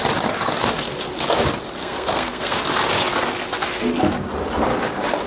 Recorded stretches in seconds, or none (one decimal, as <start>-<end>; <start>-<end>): 0.0-1.8; 2.6-5.3